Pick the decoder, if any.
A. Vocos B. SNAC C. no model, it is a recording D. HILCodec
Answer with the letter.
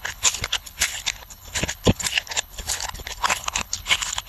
D